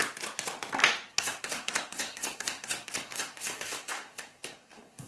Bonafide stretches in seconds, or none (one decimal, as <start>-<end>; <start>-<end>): 0.0-1.1